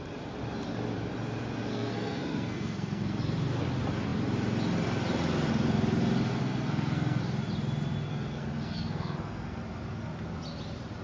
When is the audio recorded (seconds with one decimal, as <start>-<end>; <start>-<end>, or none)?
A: 0.0-1.7; 3.2-6.4; 7.2-8.1; 9.6-11.0